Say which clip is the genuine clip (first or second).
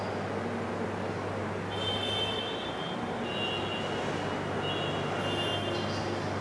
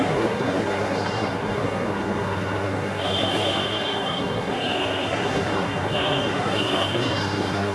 first